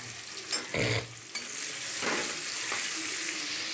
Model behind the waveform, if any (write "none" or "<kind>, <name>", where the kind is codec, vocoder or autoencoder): none